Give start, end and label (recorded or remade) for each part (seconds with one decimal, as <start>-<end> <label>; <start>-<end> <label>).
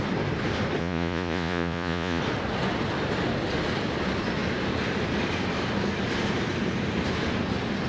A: 0.0-0.8 recorded; 0.8-2.2 remade; 2.2-7.9 recorded